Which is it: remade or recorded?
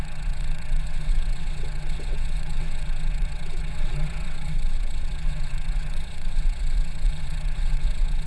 remade